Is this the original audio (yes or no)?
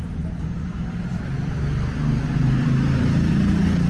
yes